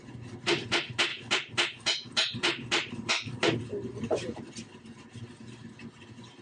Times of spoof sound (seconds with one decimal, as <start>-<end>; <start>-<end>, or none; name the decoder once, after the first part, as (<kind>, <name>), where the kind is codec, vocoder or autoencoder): 1.1-4.5 (vocoder, BigVGAN v2)